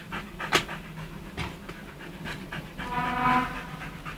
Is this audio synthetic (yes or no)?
no